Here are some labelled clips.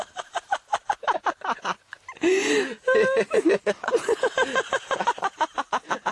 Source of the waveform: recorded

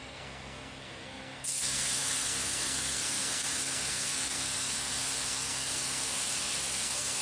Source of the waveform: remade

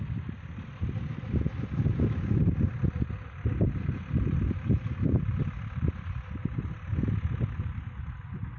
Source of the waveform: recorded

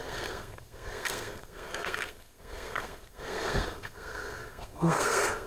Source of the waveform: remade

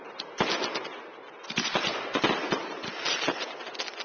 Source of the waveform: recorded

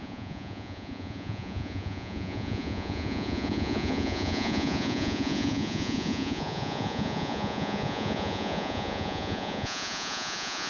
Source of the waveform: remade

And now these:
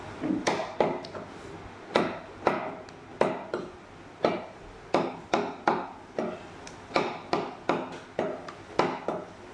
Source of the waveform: recorded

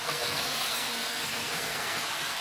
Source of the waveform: remade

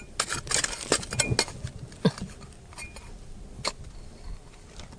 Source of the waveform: recorded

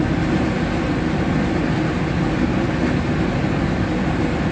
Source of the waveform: recorded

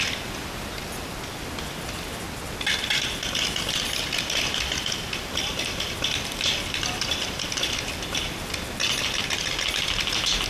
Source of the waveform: recorded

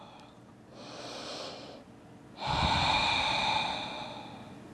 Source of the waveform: recorded